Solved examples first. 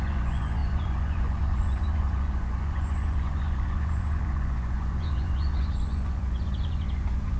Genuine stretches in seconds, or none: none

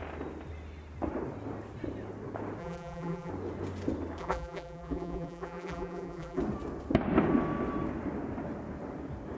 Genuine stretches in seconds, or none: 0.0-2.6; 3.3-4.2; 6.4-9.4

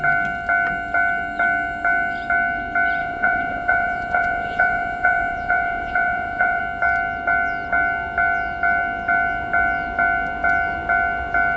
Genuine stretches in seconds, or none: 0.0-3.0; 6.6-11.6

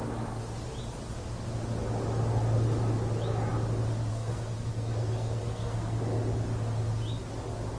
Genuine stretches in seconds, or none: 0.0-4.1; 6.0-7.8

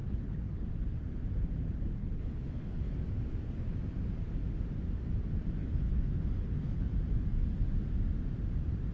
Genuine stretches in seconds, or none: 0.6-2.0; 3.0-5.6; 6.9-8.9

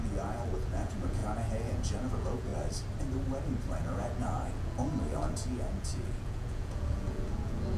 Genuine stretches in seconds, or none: 2.5-3.8

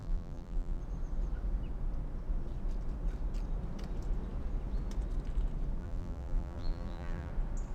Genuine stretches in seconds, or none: 0.8-5.8; 7.3-7.7

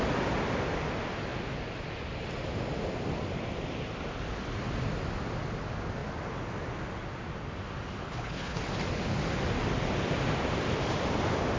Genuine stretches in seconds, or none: 0.0-8.0; 8.6-11.6